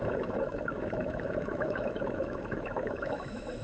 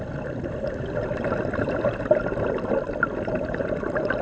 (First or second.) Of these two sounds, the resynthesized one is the first